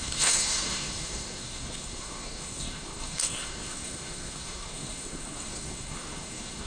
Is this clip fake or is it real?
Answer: fake